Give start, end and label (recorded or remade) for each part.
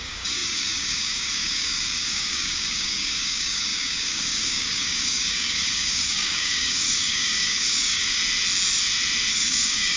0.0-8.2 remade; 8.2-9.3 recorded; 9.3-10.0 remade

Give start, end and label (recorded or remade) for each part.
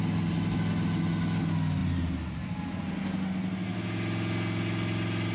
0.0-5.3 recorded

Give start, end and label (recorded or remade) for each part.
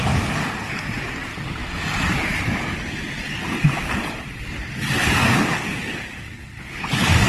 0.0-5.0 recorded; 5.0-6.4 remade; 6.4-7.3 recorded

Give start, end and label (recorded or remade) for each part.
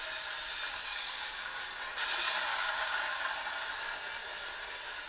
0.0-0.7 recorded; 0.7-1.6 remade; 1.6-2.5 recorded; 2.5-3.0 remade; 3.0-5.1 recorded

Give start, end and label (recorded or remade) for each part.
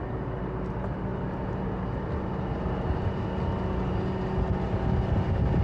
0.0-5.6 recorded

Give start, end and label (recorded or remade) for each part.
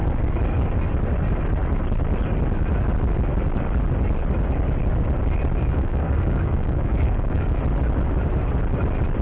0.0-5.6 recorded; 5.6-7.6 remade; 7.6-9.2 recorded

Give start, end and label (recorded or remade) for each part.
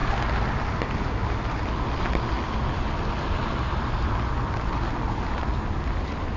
0.0-6.4 recorded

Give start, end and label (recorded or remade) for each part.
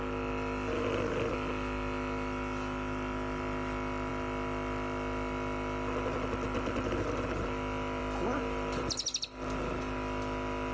0.0-10.7 recorded